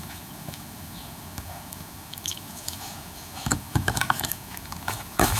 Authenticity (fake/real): fake